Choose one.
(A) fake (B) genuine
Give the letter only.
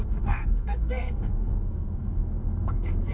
A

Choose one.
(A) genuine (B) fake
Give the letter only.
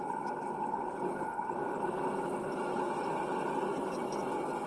A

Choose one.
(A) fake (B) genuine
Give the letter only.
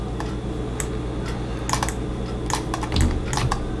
B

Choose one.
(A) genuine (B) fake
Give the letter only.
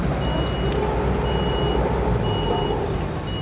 A